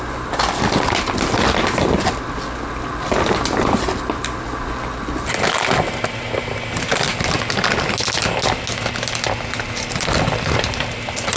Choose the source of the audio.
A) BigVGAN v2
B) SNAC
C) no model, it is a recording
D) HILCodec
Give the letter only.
C